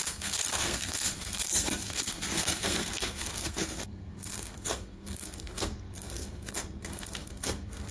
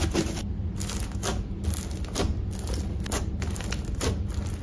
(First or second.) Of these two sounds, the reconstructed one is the first